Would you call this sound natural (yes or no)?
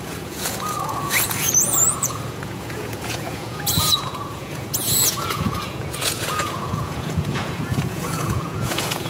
no